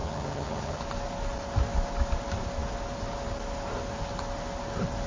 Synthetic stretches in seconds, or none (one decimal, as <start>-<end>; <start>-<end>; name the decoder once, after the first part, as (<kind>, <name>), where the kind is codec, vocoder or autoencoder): 0.0-0.8 (vocoder, HiFi-GAN)